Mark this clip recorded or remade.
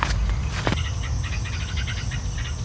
recorded